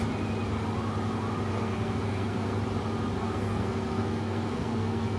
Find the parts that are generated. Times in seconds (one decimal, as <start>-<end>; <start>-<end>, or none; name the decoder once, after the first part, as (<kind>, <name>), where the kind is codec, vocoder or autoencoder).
1.5-2.6 (codec, SNAC); 3.2-5.2